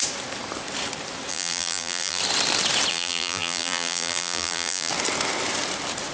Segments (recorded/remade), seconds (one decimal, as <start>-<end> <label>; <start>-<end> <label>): 0.0-1.3 recorded; 1.3-2.2 remade; 2.2-2.9 recorded; 2.9-4.9 remade; 4.9-6.1 recorded